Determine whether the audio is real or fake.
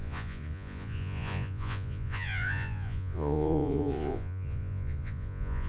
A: fake